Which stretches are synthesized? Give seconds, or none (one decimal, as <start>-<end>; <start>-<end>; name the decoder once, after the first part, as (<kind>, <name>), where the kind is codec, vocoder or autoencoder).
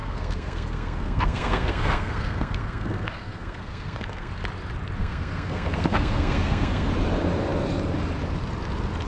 0.0-4.3 (codec, SNAC); 5.0-6.9